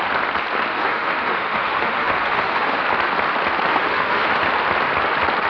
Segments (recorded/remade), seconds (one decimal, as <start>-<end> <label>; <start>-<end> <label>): 0.0-0.7 recorded; 0.7-2.8 remade; 2.8-3.7 recorded; 3.7-4.3 remade; 4.3-5.5 recorded